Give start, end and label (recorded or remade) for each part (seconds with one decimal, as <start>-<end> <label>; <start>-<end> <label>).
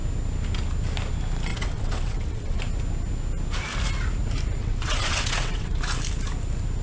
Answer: 0.0-1.5 recorded; 1.5-2.6 remade; 2.6-4.6 recorded; 4.6-5.8 remade; 5.8-6.8 recorded